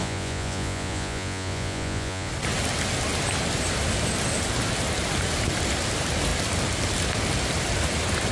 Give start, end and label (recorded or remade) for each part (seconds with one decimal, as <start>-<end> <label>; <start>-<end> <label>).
0.0-2.3 remade; 2.3-8.3 recorded